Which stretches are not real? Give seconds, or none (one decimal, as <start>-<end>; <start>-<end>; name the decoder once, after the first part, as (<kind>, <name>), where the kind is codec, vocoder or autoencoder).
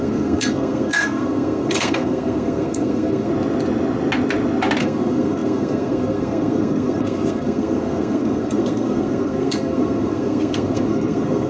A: 0.0-3.3 (codec, SNAC); 4.8-11.5